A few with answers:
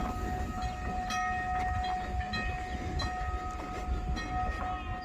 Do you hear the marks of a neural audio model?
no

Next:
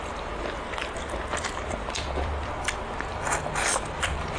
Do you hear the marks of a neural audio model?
yes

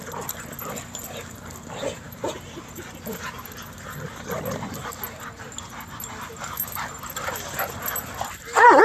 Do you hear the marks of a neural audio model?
no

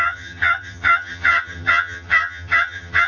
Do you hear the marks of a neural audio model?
yes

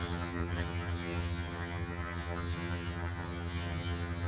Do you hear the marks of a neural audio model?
yes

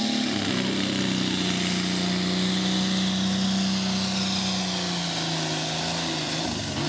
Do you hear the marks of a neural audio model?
no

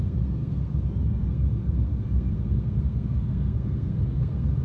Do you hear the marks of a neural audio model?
yes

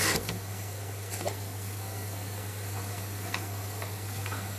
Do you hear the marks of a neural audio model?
yes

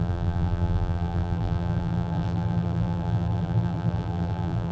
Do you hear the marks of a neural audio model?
yes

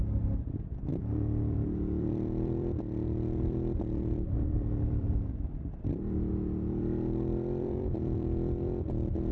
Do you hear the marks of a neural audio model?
yes